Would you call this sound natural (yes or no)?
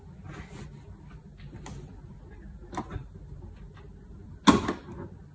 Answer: yes